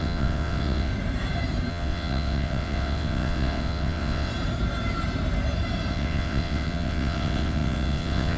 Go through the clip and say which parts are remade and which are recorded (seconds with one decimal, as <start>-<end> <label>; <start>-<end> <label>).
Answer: 0.0-0.9 remade; 0.9-1.7 recorded; 1.7-4.3 remade; 4.3-5.9 recorded; 5.9-8.4 remade